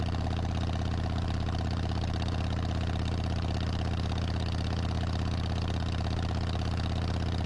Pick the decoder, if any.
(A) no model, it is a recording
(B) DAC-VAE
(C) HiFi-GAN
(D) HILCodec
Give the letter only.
A